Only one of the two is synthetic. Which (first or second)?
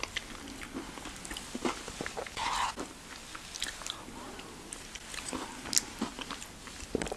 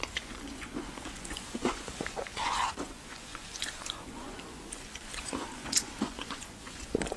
second